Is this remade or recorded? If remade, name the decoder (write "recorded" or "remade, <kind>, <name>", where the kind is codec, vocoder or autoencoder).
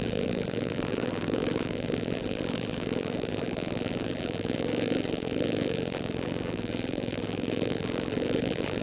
remade, vocoder, BigVGAN v2